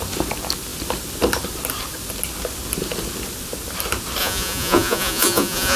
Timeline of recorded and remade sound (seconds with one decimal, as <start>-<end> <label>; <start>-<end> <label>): 0.0-4.2 recorded; 4.2-5.8 remade